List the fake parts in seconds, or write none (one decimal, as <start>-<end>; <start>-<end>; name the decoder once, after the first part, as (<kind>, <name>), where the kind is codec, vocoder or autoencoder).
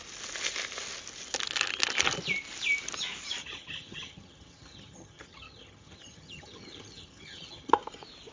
3.4-7.7 (vocoder, HiFi-GAN)